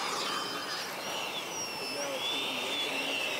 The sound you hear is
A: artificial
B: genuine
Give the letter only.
B